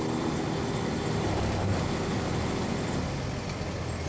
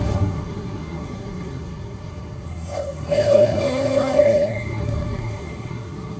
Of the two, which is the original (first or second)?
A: first